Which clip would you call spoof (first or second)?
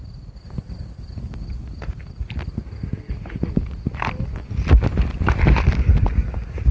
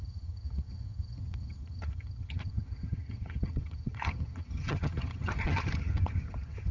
second